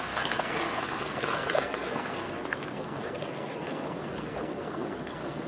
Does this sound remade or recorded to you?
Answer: remade